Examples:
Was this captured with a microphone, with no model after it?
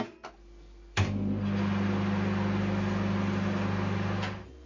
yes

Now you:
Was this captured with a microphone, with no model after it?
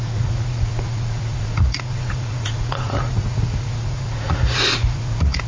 no